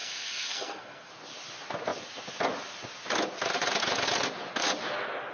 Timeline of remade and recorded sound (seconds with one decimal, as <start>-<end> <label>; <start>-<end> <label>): 0.0-1.1 remade; 1.1-5.3 recorded